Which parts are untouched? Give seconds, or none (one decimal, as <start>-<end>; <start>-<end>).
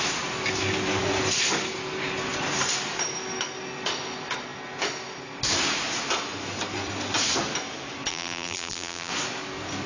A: 0.0-8.1; 9.1-9.9